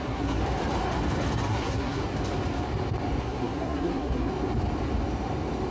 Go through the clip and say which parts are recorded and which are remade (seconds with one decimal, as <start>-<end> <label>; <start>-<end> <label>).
0.0-0.4 remade; 0.4-1.5 recorded; 1.5-2.0 remade; 2.0-3.2 recorded; 3.2-4.3 remade; 4.3-5.7 recorded